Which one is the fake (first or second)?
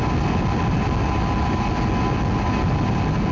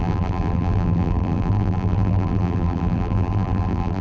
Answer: second